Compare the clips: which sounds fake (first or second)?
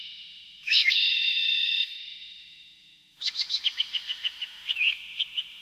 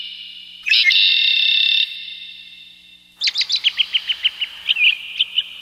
first